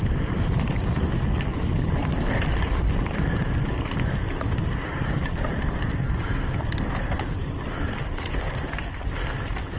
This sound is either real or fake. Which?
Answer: fake